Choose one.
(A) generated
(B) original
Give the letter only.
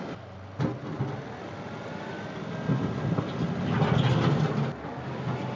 B